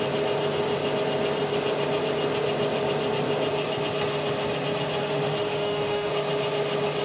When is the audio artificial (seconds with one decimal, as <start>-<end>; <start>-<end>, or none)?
5.0-6.1